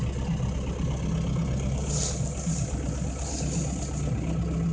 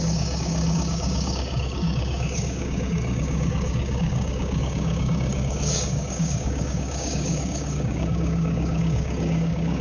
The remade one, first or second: second